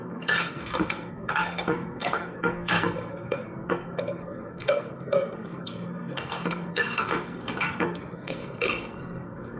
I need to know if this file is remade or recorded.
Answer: remade